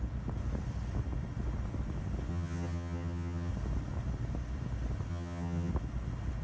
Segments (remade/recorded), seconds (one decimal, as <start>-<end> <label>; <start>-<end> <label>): 0.0-2.3 recorded; 2.3-3.5 remade; 3.5-5.1 recorded; 5.1-5.7 remade; 5.7-6.4 recorded